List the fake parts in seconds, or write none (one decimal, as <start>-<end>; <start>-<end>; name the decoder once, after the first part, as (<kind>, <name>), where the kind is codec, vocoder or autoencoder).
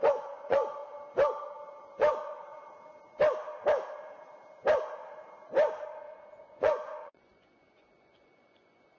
0.0-0.8 (vocoder, Vocos); 1.8-2.5; 6.4-9.0